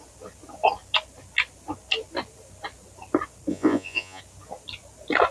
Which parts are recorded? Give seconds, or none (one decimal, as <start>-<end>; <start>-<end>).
0.0-3.5; 4.2-5.3